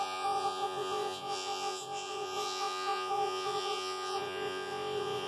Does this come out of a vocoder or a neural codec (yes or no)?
yes